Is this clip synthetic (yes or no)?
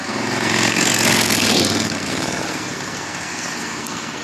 yes